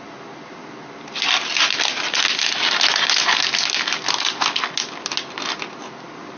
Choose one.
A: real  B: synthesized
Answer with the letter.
A